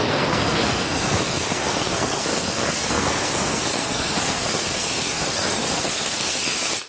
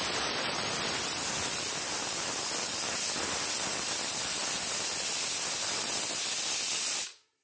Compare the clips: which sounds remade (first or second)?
first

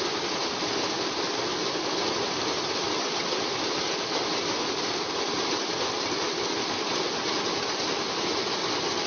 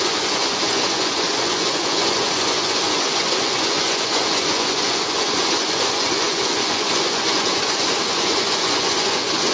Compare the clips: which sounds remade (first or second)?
second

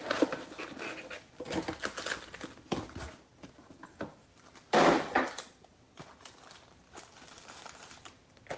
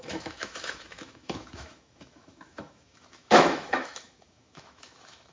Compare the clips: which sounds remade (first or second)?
second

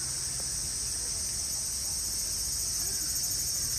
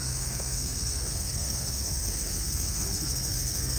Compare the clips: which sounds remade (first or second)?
second